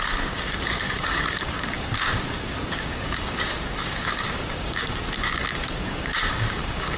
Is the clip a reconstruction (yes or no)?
yes